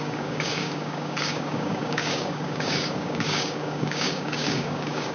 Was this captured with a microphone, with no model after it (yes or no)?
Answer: no